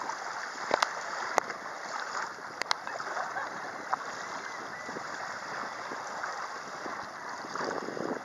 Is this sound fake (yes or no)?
no